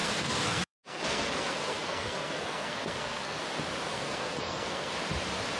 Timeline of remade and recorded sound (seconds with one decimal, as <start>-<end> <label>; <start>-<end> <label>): 0.0-3.4 remade; 3.4-3.9 recorded; 3.9-4.9 remade; 4.9-5.6 recorded